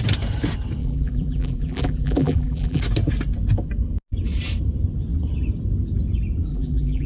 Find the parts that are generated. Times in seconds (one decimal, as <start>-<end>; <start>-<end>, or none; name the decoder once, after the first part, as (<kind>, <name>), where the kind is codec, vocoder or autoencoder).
0.8-2.8 (vocoder, BigVGAN v2); 6.5-7.1